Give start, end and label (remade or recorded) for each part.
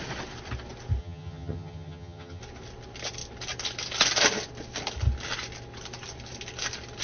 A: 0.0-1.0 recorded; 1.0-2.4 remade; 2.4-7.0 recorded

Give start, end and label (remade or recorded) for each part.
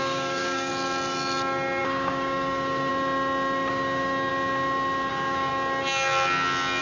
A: 0.0-0.7 remade; 0.7-1.8 recorded; 1.8-2.9 remade; 2.9-3.7 recorded; 3.7-4.3 remade; 4.3-5.1 recorded; 5.1-5.5 remade; 5.5-6.8 recorded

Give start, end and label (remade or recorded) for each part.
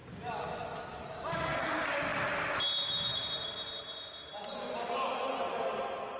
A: 0.0-6.2 recorded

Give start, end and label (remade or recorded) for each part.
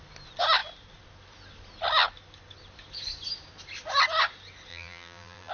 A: 0.0-4.7 recorded; 4.7-5.5 remade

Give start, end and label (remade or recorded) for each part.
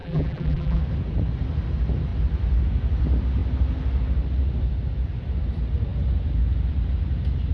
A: 0.0-0.8 remade; 0.8-7.5 recorded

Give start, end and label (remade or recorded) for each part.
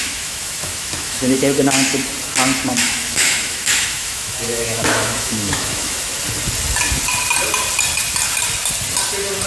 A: 0.0-1.9 remade; 1.9-2.7 recorded; 2.7-6.1 remade; 6.1-9.5 recorded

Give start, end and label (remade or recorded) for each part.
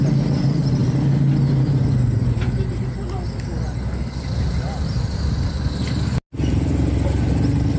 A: 0.0-7.8 recorded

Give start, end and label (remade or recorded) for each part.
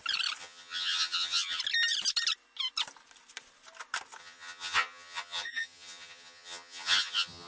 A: 0.0-0.4 recorded; 0.4-1.6 remade; 1.6-4.2 recorded; 4.2-7.5 remade